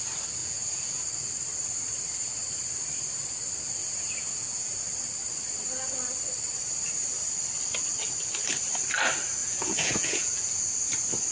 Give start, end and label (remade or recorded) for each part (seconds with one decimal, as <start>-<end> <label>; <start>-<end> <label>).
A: 0.0-0.4 recorded; 0.4-1.0 remade; 1.0-3.8 recorded; 3.8-4.8 remade; 4.8-9.4 recorded; 9.4-10.6 remade; 10.6-11.3 recorded